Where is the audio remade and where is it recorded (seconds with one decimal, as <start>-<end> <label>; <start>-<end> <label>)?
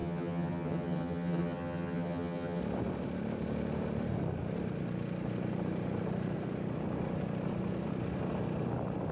0.0-2.6 remade; 2.6-9.1 recorded